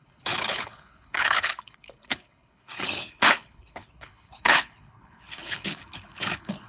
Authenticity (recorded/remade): remade